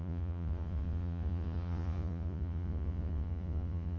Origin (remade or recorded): remade